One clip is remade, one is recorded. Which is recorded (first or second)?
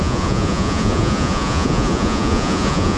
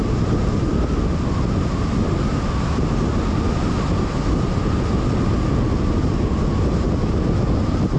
second